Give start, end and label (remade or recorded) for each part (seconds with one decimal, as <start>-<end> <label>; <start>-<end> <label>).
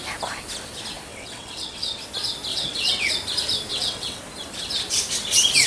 0.0-1.1 recorded; 1.1-2.0 remade; 2.0-2.5 recorded; 2.5-3.1 remade; 3.1-3.7 recorded; 3.7-4.2 remade; 4.2-5.7 recorded